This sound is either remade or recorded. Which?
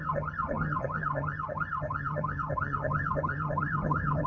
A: remade